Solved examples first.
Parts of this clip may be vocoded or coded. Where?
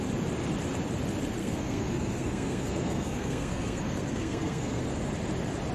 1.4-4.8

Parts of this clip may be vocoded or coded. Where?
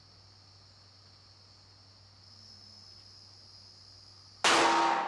none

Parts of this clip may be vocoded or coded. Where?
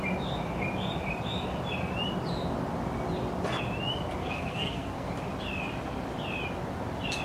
4.2-5.1